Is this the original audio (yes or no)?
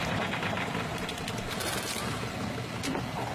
yes